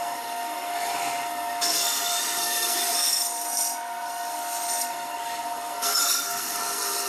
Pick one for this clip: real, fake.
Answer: fake